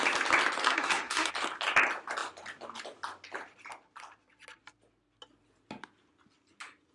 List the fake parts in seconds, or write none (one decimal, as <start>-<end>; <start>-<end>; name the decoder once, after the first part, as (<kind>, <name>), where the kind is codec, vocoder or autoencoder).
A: 0.6-1.3 (codec, SNAC)